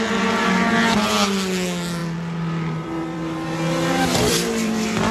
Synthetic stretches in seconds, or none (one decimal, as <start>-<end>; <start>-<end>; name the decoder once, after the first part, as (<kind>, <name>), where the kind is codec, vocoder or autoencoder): 2.0-5.1 (vocoder, BigVGAN v2)